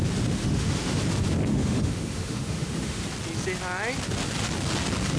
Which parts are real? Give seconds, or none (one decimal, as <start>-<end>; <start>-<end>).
0.0-0.4; 1.0-1.5; 3.0-5.2